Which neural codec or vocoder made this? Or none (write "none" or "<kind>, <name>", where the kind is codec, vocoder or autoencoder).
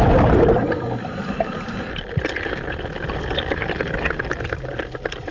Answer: none